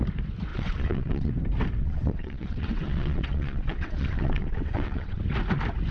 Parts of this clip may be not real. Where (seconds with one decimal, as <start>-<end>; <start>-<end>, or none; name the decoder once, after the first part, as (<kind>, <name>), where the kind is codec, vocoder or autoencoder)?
0.5-1.3 (vocoder, WaveNeXt); 1.8-5.2